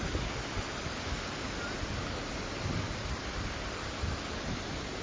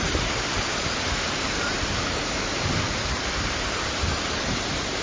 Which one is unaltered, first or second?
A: first